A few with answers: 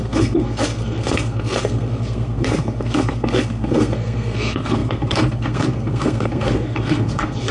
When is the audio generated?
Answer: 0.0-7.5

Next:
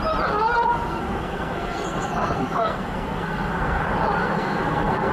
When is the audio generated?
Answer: 0.7-3.8; 4.2-5.1